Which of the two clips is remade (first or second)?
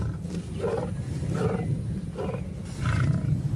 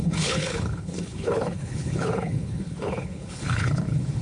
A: second